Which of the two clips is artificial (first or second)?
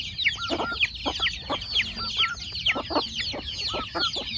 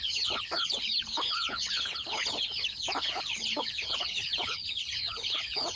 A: second